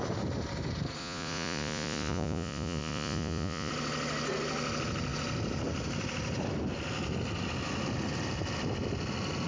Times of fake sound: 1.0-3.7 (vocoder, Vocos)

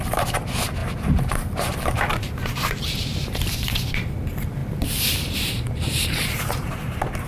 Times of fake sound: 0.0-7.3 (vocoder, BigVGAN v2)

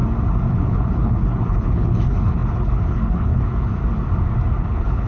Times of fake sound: 0.5-3.8 (codec, HILCodec); 4.6-5.1

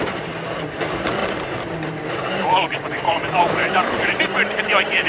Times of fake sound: 0.0-1.2 (vocoder, BigVGAN v2); 2.0-5.1